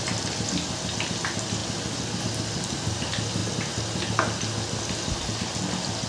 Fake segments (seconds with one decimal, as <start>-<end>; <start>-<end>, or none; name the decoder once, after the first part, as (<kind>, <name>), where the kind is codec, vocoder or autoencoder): none